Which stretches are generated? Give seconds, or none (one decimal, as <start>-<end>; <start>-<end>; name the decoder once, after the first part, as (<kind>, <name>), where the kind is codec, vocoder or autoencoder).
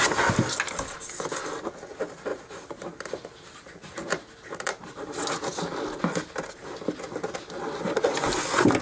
2.3-5.3 (vocoder, BigVGAN v2)